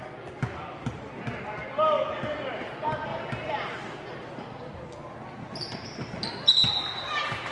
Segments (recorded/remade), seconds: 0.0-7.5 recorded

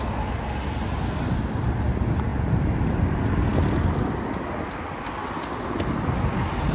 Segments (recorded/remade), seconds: 0.0-6.7 recorded

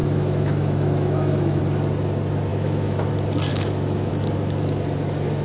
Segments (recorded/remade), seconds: 0.0-1.6 remade; 1.6-2.5 recorded; 2.5-3.1 remade; 3.1-3.5 recorded; 3.5-4.1 remade; 4.1-5.4 recorded

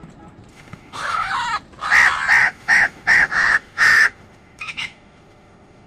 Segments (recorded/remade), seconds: 0.0-0.5 recorded; 0.5-1.3 remade; 1.3-2.4 recorded; 2.4-5.9 remade

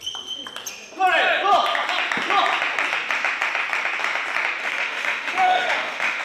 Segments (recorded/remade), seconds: 0.0-4.6 recorded; 4.6-6.2 remade

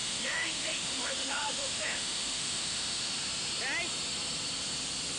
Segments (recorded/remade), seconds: 0.0-3.1 remade; 3.1-5.2 recorded

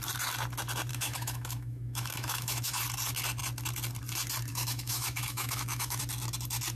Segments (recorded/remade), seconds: 0.0-0.9 recorded; 0.9-2.8 remade; 2.8-4.5 recorded; 4.5-6.0 remade; 6.0-6.7 recorded

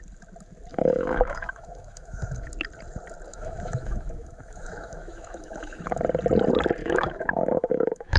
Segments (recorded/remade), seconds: 0.0-0.7 recorded; 0.7-2.5 remade; 2.5-3.3 recorded; 3.3-6.0 remade; 6.0-6.8 recorded; 6.8-8.2 remade